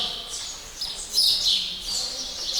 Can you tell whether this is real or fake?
fake